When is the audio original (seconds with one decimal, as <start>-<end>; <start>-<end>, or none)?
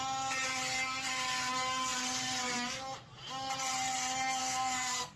0.0-4.4